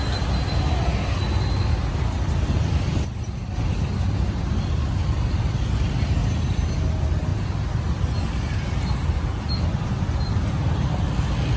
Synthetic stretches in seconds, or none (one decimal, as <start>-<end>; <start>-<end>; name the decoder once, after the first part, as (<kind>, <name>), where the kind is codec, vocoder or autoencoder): none

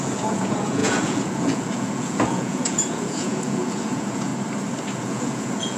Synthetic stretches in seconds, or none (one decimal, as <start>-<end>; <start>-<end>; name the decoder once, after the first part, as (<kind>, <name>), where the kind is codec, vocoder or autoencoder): 0.0-4.3 (vocoder, Vocos); 5.0-5.8

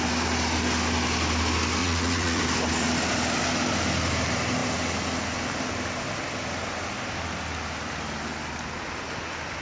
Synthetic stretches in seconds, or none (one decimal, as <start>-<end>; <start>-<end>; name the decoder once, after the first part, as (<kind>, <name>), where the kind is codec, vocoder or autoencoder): 1.8-2.4 (vocoder, Vocos)